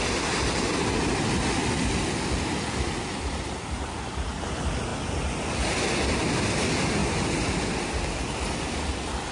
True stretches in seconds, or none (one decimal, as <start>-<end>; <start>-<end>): 0.0-9.3